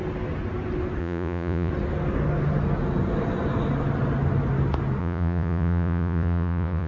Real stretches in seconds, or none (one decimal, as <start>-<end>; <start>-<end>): 0.0-1.0; 1.7-5.0